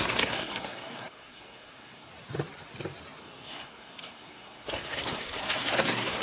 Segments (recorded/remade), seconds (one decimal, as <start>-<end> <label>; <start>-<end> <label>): 0.0-2.1 remade; 2.1-3.2 recorded; 3.2-6.2 remade